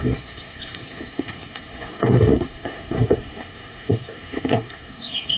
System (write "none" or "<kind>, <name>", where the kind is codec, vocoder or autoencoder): codec, SNAC